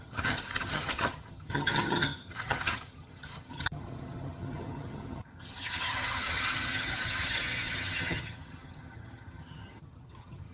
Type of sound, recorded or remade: remade